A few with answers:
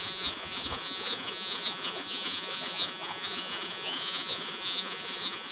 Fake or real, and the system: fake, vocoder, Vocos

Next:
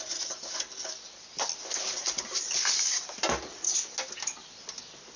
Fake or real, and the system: real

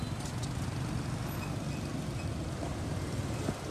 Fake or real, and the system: real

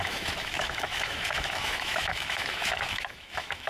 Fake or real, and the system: fake, autoencoder, DAC-VAE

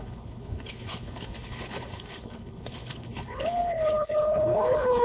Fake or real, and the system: fake, codec, HILCodec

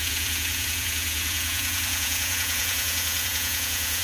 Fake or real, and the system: fake, vocoder, Vocos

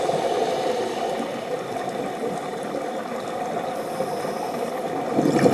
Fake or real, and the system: real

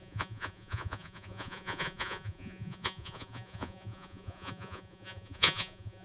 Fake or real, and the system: fake, vocoder, Vocos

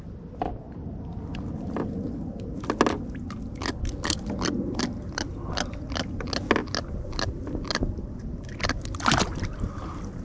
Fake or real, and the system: real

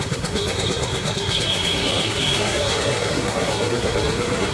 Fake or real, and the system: fake, codec, SNAC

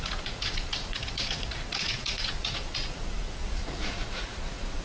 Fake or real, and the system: fake, vocoder, Vocos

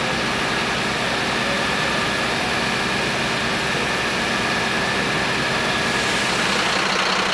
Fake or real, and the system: real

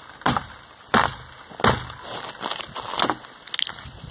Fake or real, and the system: real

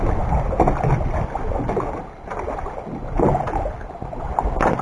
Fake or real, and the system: real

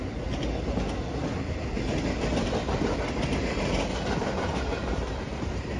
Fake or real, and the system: real